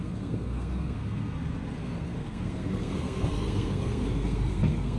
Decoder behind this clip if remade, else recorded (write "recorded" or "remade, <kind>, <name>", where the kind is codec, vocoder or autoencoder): remade, codec, SNAC